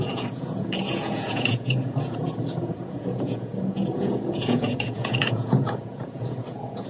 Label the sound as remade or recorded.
remade